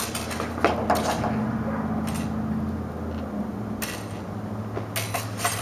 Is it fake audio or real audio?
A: real